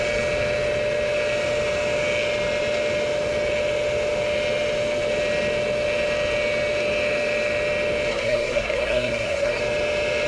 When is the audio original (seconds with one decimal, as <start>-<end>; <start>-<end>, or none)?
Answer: 0.0-8.1; 9.6-10.3